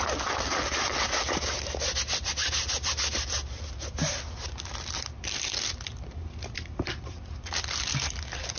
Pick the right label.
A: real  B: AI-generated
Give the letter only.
A